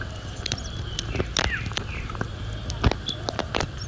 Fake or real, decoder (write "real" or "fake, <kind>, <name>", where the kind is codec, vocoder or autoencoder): real